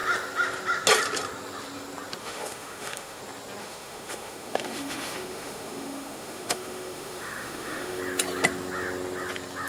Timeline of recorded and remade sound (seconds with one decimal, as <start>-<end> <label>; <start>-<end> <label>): 0.0-2.2 recorded; 2.2-3.2 remade; 3.2-3.6 recorded; 3.6-8.0 remade; 8.0-9.7 recorded